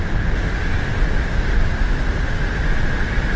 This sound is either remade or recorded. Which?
recorded